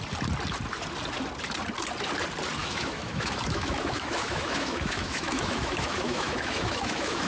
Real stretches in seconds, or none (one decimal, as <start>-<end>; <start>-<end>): 0.0-2.6